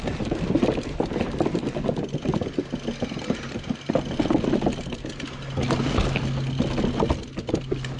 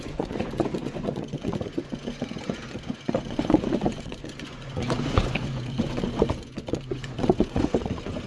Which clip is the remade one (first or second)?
second